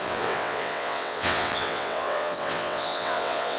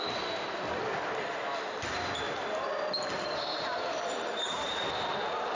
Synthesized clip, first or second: first